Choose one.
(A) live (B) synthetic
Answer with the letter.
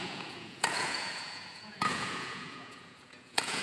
B